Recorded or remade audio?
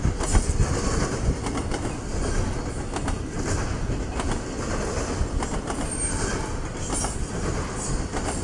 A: recorded